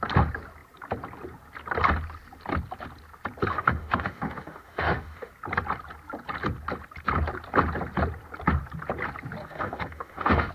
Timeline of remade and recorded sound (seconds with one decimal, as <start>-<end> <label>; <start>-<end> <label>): 0.0-3.5 recorded; 3.5-5.3 remade; 5.3-9.4 recorded; 9.4-10.5 remade